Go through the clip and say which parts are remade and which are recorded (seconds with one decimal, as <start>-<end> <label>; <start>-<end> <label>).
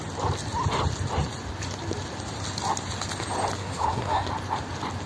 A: 0.0-3.6 recorded; 3.6-4.3 remade; 4.3-5.1 recorded